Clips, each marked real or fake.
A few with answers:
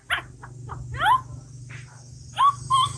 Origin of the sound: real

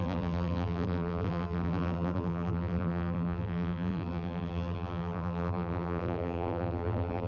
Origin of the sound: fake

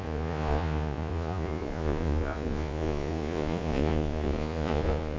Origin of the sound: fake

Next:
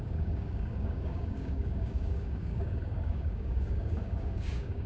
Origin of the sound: fake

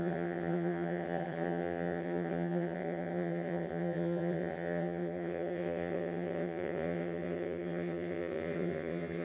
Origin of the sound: fake